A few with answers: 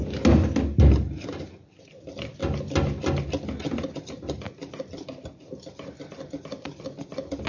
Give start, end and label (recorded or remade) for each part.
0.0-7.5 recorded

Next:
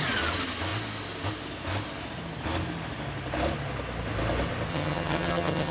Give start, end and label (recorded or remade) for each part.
0.0-4.7 recorded; 4.7-5.7 remade

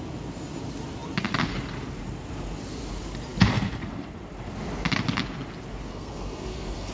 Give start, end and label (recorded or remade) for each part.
0.0-5.9 recorded; 5.9-6.9 remade

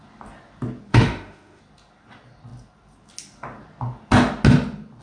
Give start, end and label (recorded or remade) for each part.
0.0-0.9 recorded; 0.9-1.6 remade; 1.6-5.0 recorded

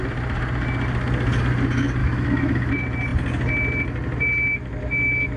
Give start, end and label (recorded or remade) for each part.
0.0-2.0 recorded; 2.0-2.7 remade; 2.7-5.4 recorded

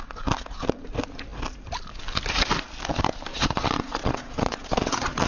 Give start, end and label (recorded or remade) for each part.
0.0-3.3 recorded; 3.3-5.3 remade

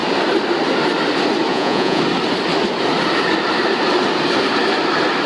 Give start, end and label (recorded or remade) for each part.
0.0-1.5 recorded; 1.5-2.0 remade; 2.0-5.3 recorded